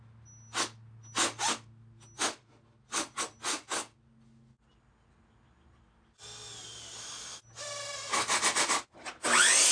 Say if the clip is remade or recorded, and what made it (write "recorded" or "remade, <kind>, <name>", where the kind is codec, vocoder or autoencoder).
recorded